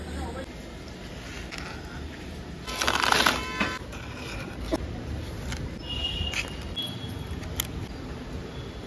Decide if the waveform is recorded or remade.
recorded